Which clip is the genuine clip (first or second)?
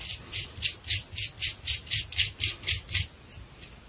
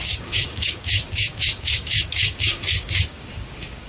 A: first